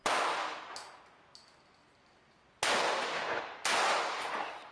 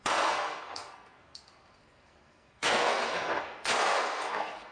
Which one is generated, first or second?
second